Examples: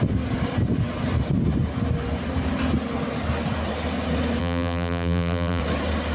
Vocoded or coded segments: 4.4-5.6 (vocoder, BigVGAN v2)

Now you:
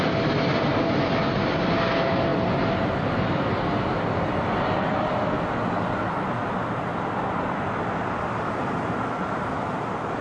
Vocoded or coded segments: none

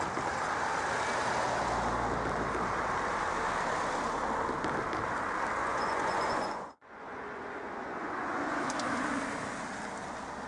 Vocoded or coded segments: 5.6-8.7 (vocoder, Vocos)

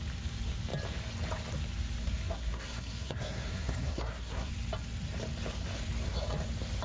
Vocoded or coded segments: 2.0-4.5 (codec, SNAC)